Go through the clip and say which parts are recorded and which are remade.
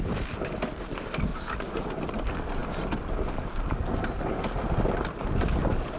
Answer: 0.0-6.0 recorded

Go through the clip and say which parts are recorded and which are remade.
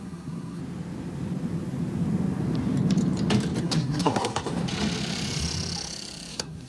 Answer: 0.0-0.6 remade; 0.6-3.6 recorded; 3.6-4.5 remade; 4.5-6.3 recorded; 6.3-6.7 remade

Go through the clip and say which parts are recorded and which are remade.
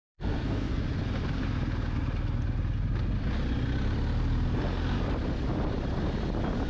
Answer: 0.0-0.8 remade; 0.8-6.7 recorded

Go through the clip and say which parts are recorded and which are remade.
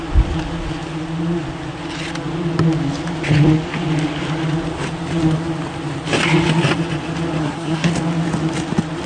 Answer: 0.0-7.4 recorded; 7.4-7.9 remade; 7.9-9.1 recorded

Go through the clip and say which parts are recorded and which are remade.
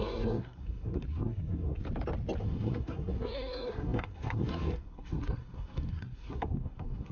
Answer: 0.0-1.8 remade; 1.8-2.4 recorded; 2.4-7.1 remade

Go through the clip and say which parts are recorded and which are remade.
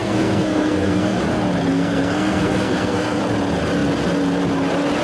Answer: 0.0-1.2 remade; 1.2-1.7 recorded; 1.7-3.2 remade; 3.2-5.0 recorded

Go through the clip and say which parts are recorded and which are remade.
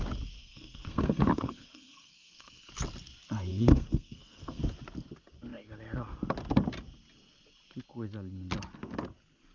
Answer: 0.0-0.4 recorded; 0.4-2.7 remade; 2.7-3.5 recorded; 3.5-4.6 remade; 4.6-9.5 recorded